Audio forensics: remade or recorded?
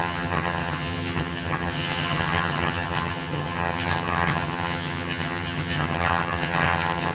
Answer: remade